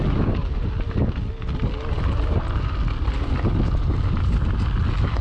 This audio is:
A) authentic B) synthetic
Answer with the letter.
A